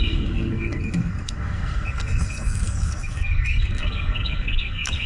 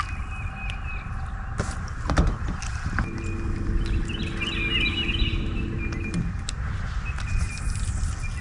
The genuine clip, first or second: second